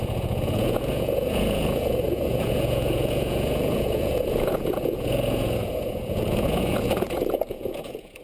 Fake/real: fake